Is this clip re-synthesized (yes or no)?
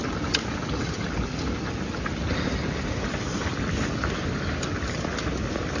no